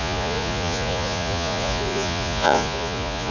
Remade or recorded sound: remade